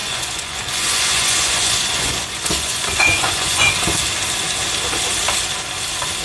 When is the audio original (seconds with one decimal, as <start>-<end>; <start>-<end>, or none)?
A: 3.7-6.2